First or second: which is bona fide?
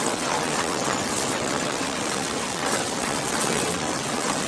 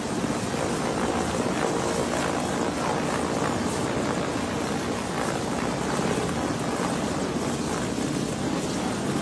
second